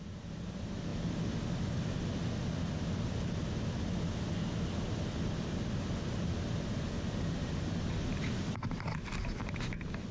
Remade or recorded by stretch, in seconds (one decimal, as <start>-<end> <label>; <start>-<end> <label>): 0.0-10.1 recorded

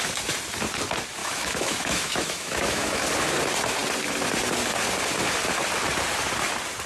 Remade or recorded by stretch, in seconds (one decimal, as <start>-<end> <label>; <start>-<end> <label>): 0.0-1.2 recorded; 1.2-3.0 remade; 3.0-6.9 recorded